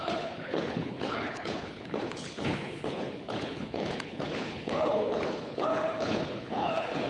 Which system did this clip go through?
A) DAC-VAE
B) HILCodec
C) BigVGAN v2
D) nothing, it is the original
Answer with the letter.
B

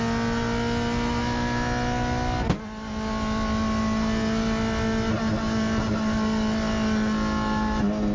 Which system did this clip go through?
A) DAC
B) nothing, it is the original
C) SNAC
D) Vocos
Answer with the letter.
B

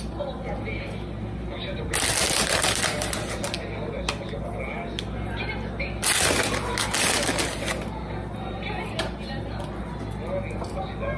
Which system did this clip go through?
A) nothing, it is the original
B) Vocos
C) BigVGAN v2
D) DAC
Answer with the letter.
A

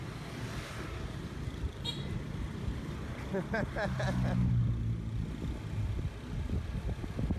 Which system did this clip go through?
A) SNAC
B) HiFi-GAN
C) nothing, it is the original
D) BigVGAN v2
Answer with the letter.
C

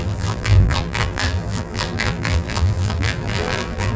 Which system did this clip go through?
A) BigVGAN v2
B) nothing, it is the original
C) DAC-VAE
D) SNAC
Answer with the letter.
A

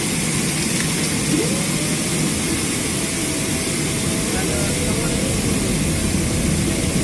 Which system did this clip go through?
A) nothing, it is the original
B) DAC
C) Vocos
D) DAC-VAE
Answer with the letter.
A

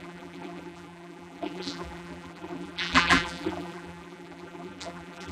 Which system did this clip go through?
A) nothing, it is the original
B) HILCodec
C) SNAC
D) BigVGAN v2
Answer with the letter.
D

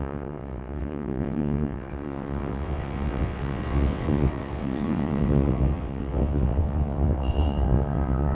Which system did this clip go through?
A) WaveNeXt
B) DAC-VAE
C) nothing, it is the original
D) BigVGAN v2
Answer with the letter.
A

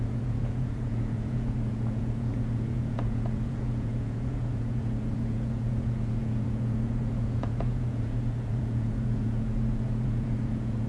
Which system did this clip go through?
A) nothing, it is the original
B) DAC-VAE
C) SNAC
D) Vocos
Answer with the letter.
D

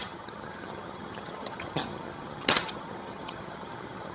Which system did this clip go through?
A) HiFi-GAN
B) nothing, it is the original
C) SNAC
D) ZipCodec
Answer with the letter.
A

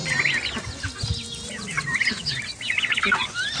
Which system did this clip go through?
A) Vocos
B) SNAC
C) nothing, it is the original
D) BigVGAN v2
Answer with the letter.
C